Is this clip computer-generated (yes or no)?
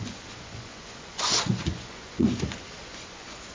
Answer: yes